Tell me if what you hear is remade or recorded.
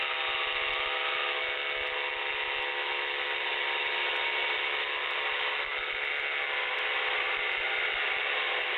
recorded